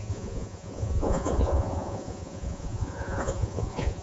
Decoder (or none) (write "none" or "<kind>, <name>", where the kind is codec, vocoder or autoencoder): vocoder, Vocos